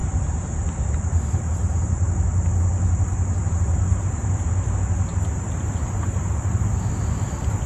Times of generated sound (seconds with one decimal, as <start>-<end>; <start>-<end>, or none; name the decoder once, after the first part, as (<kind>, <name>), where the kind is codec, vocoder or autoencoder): 0.0-2.2 (vocoder, BigVGAN v2); 3.4-4.5; 5.1-6.9